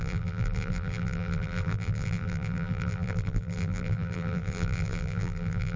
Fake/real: fake